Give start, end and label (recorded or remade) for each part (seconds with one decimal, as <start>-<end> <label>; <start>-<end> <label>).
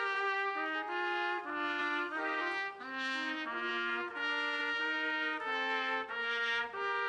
0.0-1.8 recorded; 1.8-2.4 remade; 2.4-7.1 recorded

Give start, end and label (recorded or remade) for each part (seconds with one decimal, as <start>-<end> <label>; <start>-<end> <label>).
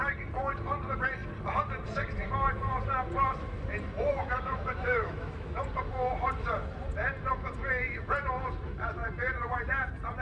0.0-4.2 recorded; 4.2-5.6 remade; 5.6-10.2 recorded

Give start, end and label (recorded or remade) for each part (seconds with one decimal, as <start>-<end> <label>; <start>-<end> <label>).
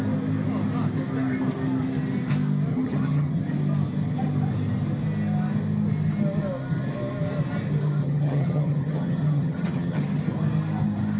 0.0-2.7 recorded; 2.7-3.4 remade; 3.4-8.0 recorded; 8.0-10.2 remade; 10.2-11.2 recorded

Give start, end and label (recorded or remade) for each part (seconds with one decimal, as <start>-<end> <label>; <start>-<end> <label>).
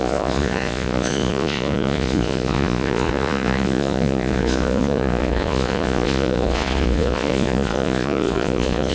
0.0-8.9 remade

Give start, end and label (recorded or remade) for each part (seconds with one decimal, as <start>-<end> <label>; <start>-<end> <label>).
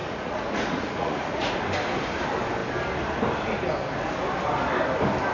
0.0-1.5 remade; 1.5-5.3 recorded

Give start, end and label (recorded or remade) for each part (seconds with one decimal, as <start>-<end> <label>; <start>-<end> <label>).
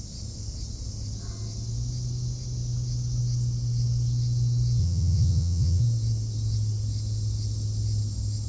0.0-4.8 recorded; 4.8-5.8 remade; 5.8-8.5 recorded